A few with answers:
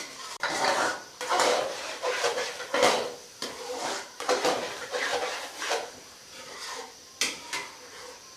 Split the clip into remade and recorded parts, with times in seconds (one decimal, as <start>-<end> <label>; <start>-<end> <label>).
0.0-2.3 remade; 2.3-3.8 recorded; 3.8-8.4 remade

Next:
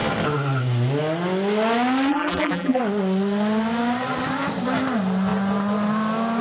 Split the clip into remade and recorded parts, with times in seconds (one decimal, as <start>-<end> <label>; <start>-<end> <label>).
0.0-2.1 recorded; 2.1-2.8 remade; 2.8-6.4 recorded

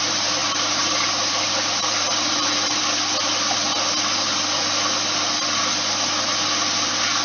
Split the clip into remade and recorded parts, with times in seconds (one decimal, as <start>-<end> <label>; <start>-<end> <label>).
0.0-0.4 recorded; 0.4-2.8 remade; 2.8-7.2 recorded